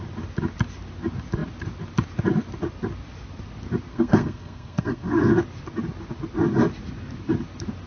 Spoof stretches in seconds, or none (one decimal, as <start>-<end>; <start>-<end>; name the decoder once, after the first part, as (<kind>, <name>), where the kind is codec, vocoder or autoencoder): 3.9-5.4 (codec, SNAC)